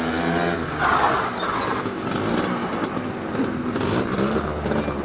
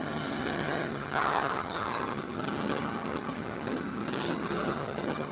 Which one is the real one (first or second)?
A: first